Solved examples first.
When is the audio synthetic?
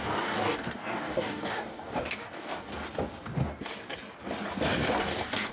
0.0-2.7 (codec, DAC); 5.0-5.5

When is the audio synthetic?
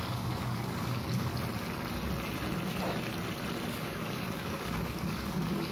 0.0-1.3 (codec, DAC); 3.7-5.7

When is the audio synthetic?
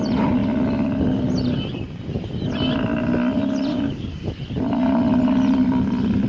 3.7-4.3 (codec, DAC)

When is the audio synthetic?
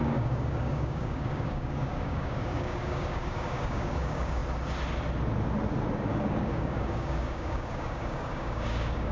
0.0-4.4 (codec, DAC); 6.1-9.1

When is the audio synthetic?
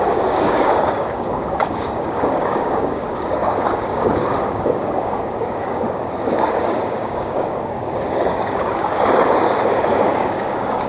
0.0-10.9 (codec, DAC)